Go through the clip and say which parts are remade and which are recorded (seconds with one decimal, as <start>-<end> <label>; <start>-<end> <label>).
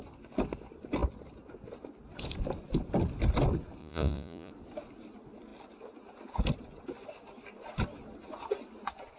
0.0-3.8 recorded; 3.8-4.5 remade; 4.5-9.2 recorded